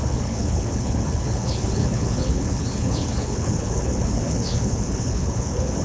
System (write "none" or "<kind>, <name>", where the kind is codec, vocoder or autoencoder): codec, HILCodec